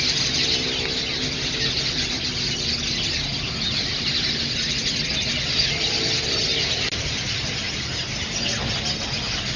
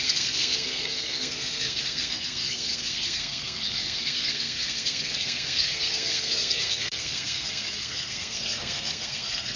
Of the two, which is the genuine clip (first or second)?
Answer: first